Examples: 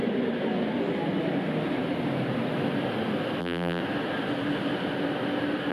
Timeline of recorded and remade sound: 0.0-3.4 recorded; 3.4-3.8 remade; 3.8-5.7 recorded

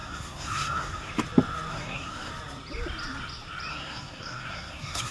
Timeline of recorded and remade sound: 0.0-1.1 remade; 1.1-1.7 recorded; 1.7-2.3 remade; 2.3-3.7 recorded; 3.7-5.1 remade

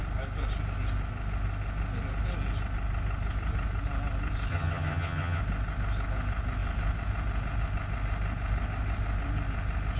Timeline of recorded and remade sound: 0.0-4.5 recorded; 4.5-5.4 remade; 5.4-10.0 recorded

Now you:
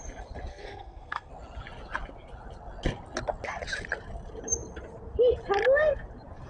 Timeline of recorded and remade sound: 0.0-0.5 recorded; 0.5-1.3 remade; 1.3-6.5 recorded

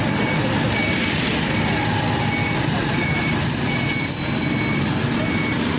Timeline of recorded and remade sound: 0.0-2.4 recorded; 2.4-4.3 remade; 4.3-5.8 recorded

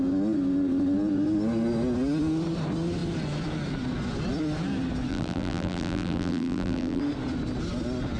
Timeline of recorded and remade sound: 0.0-5.1 recorded; 5.1-7.0 remade; 7.0-8.2 recorded